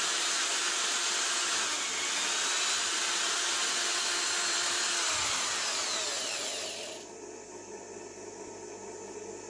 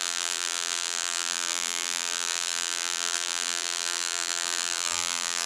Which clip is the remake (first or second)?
second